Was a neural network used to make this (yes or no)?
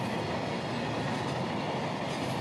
no